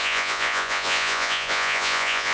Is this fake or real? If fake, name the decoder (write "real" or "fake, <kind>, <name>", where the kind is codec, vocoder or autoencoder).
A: fake, vocoder, Vocos